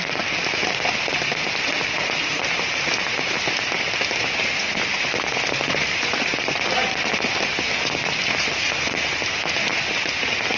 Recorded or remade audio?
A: recorded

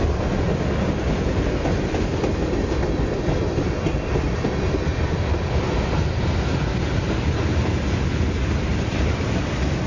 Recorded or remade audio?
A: recorded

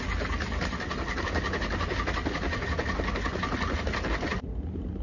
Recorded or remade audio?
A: recorded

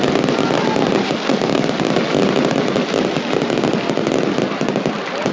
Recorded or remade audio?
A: recorded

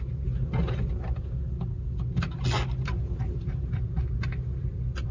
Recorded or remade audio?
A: recorded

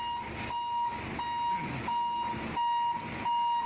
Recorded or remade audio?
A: recorded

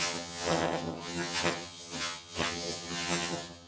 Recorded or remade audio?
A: remade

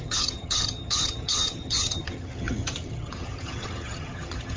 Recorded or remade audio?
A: remade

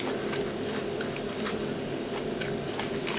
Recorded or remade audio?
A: recorded